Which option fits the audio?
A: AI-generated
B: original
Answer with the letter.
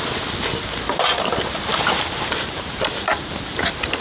B